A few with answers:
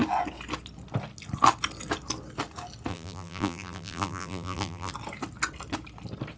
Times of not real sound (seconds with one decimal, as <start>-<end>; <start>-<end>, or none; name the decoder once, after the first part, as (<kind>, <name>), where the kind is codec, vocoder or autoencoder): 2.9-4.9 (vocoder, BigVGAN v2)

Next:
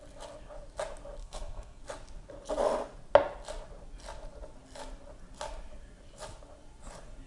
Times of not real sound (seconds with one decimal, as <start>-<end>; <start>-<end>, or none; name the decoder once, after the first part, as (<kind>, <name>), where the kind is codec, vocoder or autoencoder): 1.2-1.8 (codec, SNAC)

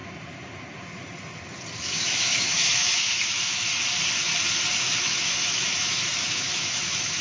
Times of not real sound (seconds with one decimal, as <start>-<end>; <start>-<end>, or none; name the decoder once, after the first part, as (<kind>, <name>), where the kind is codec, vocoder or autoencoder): 1.8-3.7 (autoencoder, DAC-VAE); 4.8-7.2

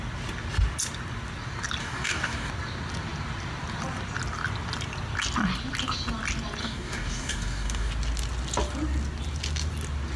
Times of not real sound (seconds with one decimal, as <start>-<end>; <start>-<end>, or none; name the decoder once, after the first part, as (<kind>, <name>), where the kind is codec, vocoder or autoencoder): 1.8-2.5 (codec, DAC); 6.6-7.9